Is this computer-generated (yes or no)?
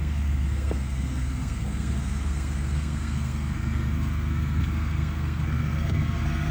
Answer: yes